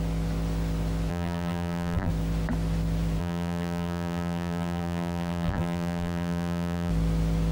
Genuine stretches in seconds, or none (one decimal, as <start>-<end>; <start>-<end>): 0.0-1.1; 2.1-3.2; 6.9-7.5